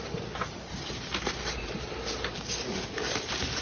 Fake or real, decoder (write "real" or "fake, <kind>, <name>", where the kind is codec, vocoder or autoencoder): real